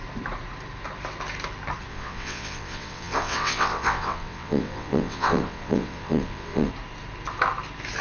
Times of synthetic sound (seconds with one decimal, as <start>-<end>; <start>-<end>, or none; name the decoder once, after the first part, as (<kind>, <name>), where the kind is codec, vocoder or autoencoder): 1.9-6.7 (vocoder, WaveNeXt)